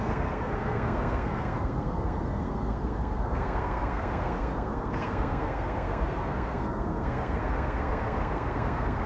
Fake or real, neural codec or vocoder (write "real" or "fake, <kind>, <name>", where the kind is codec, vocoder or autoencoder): fake, codec, SNAC